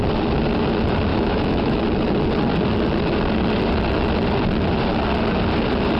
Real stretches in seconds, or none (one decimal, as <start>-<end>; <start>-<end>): 0.0-1.1; 1.8-6.0